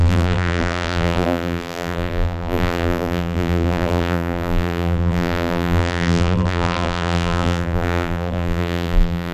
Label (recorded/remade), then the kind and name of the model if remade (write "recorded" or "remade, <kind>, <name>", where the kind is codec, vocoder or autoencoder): remade, vocoder, BigVGAN v2